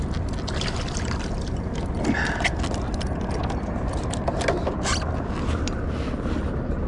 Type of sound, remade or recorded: recorded